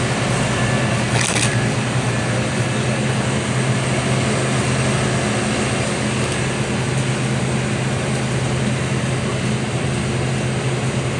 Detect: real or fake real